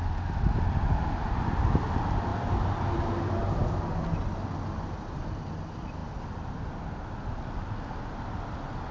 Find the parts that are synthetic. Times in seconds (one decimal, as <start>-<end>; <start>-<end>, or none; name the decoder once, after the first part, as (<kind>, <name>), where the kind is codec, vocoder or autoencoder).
none